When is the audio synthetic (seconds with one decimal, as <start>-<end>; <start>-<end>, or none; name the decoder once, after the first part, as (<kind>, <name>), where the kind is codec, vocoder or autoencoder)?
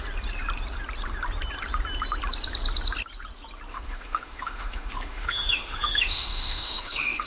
3.7-7.3 (autoencoder, DAC-VAE)